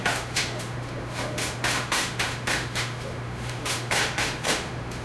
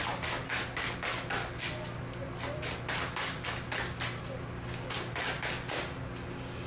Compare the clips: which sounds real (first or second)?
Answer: second